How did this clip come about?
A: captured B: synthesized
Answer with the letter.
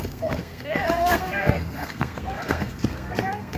B